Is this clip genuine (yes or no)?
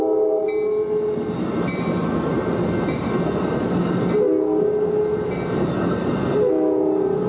yes